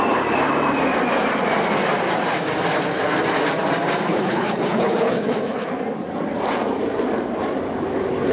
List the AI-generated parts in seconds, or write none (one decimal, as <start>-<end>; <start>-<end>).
4.1-5.7